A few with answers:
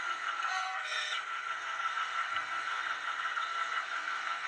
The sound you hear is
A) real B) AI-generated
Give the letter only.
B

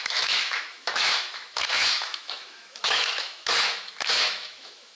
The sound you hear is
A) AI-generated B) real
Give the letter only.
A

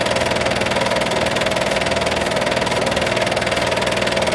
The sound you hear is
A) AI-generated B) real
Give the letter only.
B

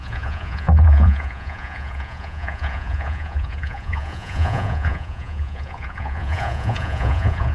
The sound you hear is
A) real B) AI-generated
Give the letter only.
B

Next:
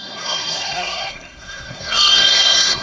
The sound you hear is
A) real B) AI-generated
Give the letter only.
B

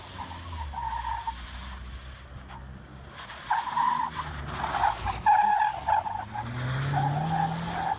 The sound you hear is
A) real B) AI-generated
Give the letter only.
A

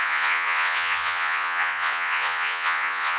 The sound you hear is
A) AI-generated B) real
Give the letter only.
A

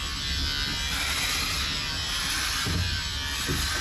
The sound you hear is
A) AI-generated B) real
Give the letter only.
B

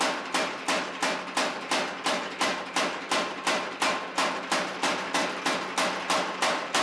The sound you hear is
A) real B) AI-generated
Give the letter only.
A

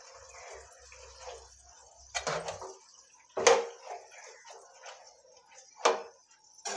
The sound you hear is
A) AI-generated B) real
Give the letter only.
B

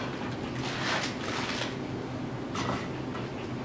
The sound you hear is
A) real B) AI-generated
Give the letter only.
A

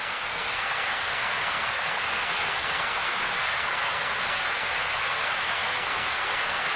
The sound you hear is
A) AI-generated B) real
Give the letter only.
A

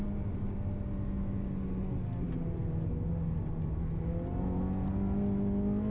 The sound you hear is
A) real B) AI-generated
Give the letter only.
A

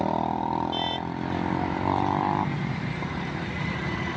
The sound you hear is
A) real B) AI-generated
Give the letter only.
B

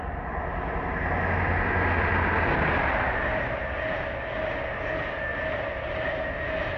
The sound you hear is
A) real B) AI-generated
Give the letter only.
A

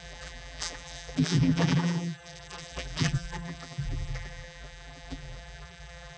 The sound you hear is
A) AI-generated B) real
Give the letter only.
A